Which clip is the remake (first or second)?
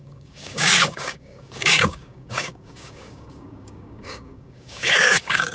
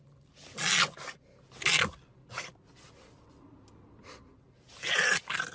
first